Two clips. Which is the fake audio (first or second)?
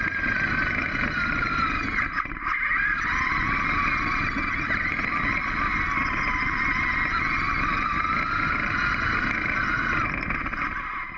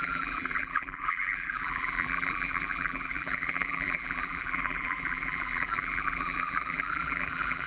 second